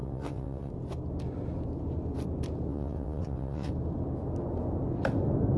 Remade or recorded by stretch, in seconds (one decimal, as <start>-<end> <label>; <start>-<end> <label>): 0.0-0.7 remade; 0.7-2.7 recorded; 2.7-3.7 remade; 3.7-5.6 recorded